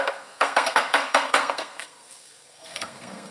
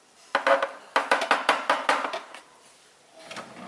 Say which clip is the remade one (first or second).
first